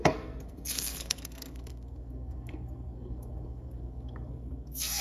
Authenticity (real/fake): fake